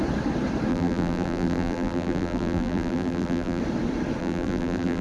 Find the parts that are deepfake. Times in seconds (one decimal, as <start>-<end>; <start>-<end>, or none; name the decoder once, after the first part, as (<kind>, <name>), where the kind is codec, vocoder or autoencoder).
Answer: 0.7-3.6 (vocoder, BigVGAN v2); 4.2-5.0